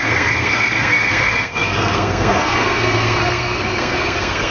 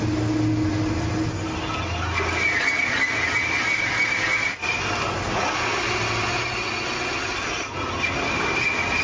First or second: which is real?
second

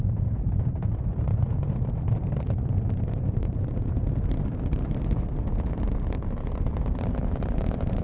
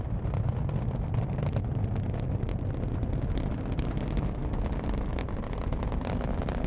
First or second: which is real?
second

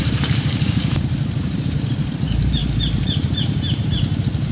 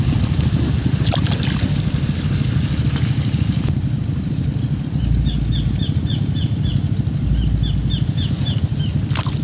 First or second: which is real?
second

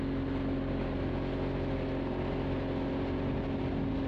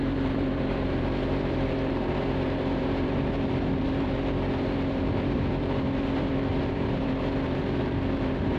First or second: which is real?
first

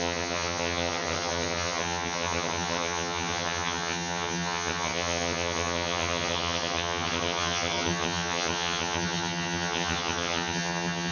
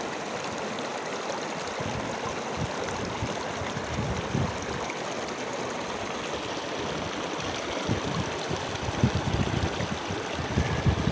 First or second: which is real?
second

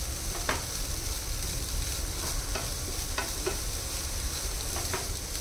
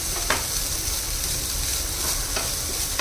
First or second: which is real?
second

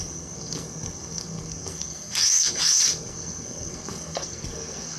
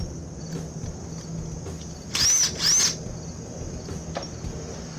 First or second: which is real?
second